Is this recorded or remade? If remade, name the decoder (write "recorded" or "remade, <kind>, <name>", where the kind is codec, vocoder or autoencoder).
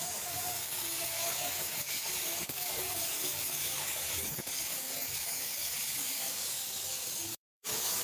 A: remade, codec, DAC